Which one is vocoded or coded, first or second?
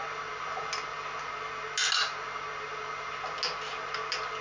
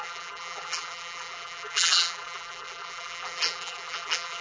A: second